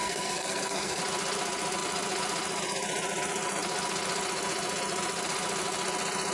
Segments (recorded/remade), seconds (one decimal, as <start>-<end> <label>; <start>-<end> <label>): 0.0-1.0 remade; 1.0-6.3 recorded